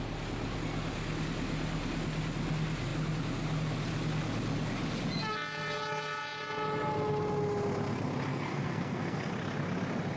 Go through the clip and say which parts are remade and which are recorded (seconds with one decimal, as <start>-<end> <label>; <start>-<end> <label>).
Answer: 0.0-8.3 recorded; 8.3-9.3 remade; 9.3-10.2 recorded